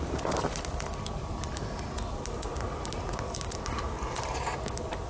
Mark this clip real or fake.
real